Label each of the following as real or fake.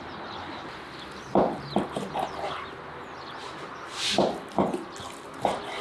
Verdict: real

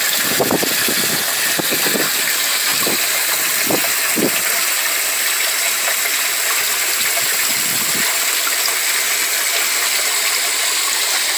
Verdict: real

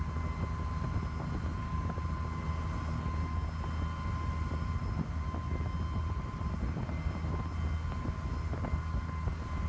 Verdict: real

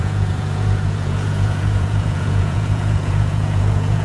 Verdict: fake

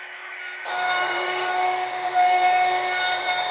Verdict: fake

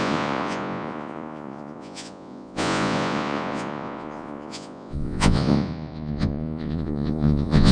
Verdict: fake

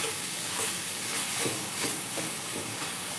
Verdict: fake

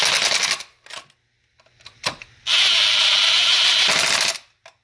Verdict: real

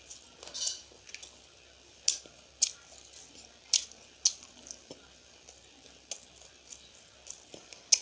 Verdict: real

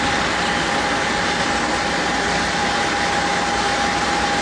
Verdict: real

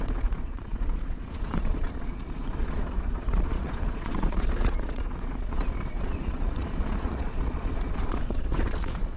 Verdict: fake